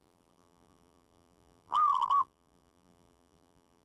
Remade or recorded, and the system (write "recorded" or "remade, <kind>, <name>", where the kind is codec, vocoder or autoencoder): remade, vocoder, BigVGAN v2